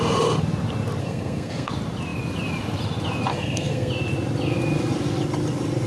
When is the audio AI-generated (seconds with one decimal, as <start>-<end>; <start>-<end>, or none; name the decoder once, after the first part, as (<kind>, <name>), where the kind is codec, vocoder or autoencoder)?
1.0-1.7 (codec, SNAC); 3.3-3.9